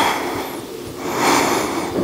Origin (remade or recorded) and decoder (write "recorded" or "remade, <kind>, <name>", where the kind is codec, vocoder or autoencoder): recorded